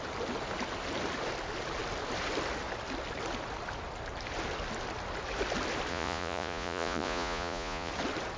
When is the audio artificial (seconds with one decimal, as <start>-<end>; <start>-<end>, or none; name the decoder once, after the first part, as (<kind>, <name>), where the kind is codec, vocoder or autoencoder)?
5.9-7.9 (vocoder, Vocos)